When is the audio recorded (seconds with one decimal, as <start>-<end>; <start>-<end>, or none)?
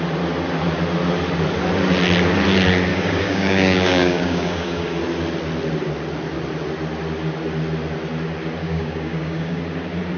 0.0-2.9; 4.9-8.6; 9.6-10.2